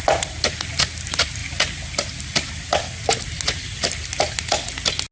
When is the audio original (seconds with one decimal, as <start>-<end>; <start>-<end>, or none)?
0.0-5.1